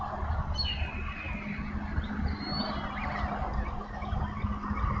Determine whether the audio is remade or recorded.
recorded